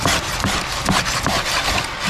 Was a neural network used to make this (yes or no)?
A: no